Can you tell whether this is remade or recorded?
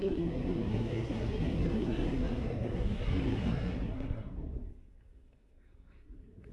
remade